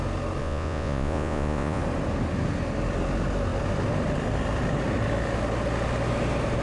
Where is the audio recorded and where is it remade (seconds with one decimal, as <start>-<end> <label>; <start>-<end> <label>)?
0.0-0.4 recorded; 0.4-1.8 remade; 1.8-6.6 recorded